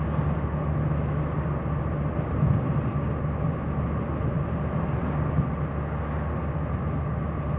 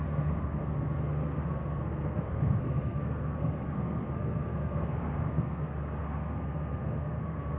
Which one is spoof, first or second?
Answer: second